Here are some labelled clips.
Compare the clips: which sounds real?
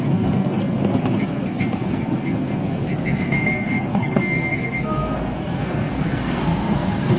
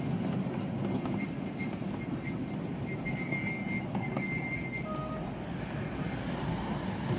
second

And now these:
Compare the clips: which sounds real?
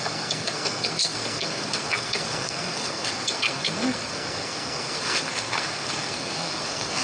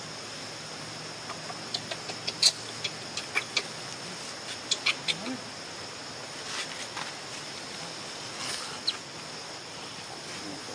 second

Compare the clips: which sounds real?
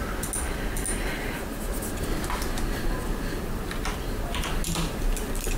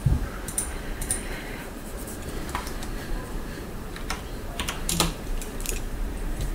first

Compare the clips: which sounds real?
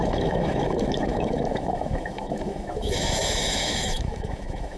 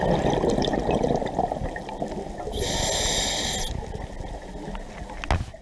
second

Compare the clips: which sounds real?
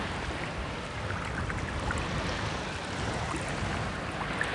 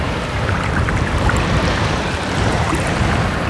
first